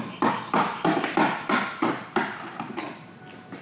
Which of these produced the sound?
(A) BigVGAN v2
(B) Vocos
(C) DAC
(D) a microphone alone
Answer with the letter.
D